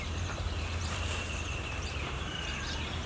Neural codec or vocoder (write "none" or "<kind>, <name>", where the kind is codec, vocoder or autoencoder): vocoder, BigVGAN v2